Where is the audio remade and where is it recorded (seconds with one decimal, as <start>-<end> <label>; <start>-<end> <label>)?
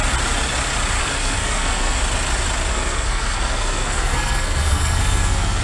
0.0-1.0 recorded; 1.0-2.0 remade; 2.0-2.7 recorded; 2.7-5.6 remade